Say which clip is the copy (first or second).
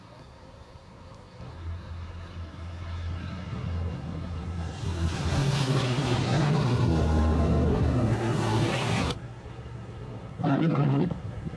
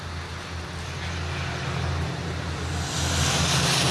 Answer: first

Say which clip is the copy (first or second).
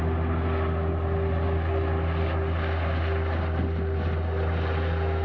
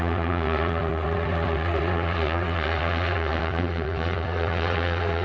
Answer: second